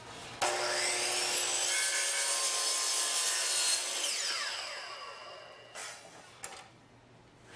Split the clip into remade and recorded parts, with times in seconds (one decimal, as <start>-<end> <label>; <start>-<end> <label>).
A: 0.0-7.6 recorded